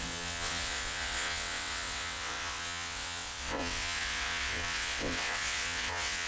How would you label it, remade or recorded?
remade